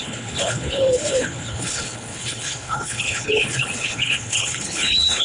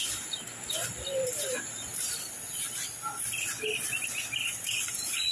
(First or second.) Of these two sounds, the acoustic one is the second